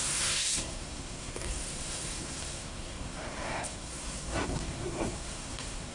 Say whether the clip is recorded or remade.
remade